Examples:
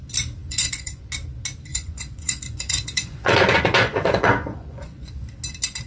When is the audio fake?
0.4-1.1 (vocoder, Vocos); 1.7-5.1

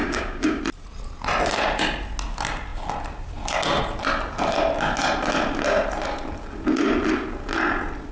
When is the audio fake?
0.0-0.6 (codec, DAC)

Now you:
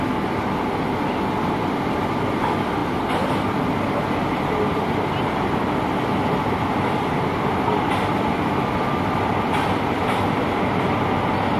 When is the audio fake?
none

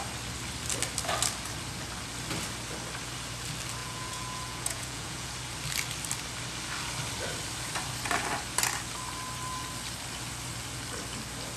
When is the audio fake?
3.8-5.3 (vocoder, Vocos)